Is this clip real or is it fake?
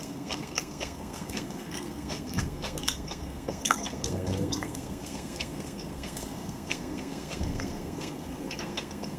fake